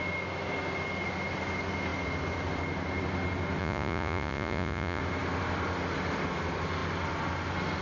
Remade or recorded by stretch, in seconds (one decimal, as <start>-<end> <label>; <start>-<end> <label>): 0.0-3.6 recorded; 3.6-5.0 remade; 5.0-7.8 recorded